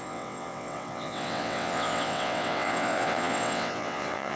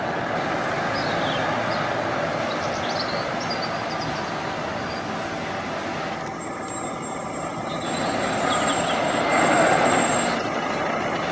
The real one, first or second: second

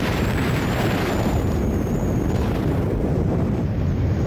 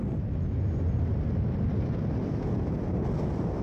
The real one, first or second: second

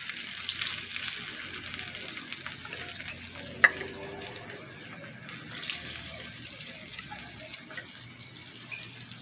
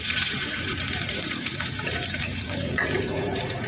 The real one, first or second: first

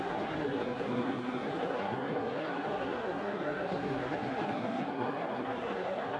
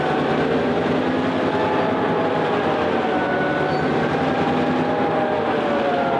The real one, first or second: second